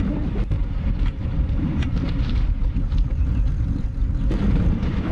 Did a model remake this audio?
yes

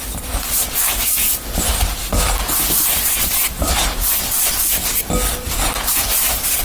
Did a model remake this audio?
no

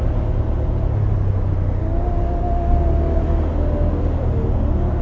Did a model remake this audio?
no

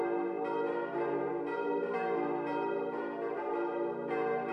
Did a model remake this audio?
no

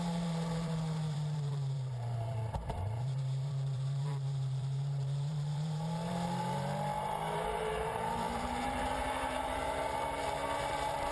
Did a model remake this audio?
yes